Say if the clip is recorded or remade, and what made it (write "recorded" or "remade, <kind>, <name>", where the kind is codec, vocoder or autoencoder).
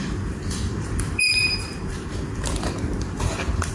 remade, vocoder, BigVGAN v2